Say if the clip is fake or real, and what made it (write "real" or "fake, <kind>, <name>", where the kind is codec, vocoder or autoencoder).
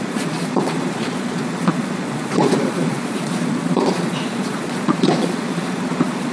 fake, vocoder, Vocos